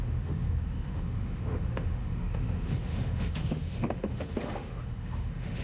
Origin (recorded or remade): remade